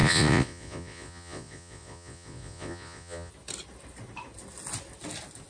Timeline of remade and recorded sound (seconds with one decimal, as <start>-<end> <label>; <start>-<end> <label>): 0.0-3.3 remade; 3.3-5.5 recorded

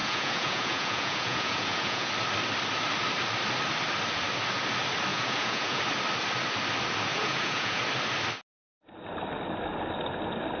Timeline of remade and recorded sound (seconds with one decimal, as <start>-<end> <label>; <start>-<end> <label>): 0.0-2.1 remade; 2.1-5.1 recorded; 5.1-5.8 remade; 5.8-7.1 recorded; 7.1-7.8 remade; 7.8-10.6 recorded

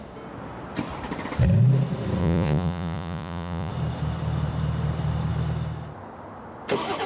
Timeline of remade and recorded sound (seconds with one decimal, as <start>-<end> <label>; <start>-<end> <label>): 0.0-2.2 recorded; 2.2-3.7 remade; 3.7-7.1 recorded

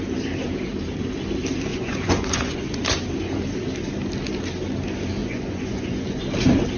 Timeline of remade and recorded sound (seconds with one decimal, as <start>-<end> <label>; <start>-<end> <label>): 0.0-1.7 recorded; 1.7-2.8 remade; 2.8-5.2 recorded; 5.2-6.2 remade; 6.2-6.8 recorded

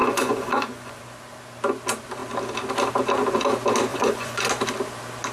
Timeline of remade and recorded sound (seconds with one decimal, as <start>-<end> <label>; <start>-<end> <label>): 0.0-1.0 remade; 1.0-3.9 recorded; 3.9-4.5 remade; 4.5-5.3 recorded

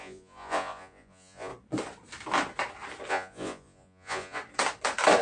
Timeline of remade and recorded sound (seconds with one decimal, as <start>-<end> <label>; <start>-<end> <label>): 0.0-1.5 remade; 1.5-3.1 recorded; 3.1-4.4 remade; 4.4-5.2 recorded

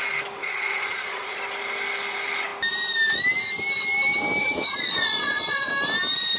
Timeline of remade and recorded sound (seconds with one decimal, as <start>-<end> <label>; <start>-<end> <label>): 0.0-0.4 recorded; 0.4-1.4 remade; 1.4-4.4 recorded; 4.4-5.7 remade; 5.7-6.4 recorded

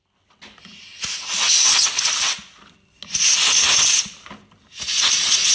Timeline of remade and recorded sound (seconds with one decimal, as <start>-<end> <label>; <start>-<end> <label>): 0.0-5.5 recorded